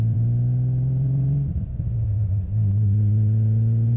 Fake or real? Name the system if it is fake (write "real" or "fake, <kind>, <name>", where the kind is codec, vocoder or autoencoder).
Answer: fake, vocoder, Vocos